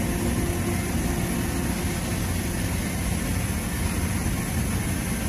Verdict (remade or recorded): recorded